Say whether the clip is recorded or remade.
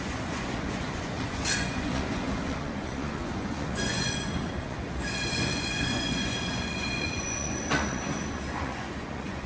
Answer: remade